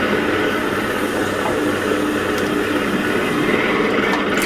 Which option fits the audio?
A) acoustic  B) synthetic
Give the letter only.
A